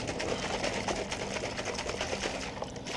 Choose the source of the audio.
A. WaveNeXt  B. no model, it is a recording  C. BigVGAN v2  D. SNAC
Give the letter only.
B